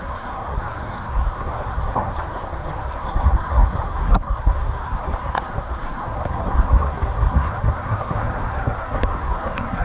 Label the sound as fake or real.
fake